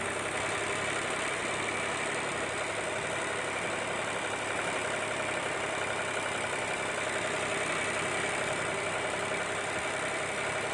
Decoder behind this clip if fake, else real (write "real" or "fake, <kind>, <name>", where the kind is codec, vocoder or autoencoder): real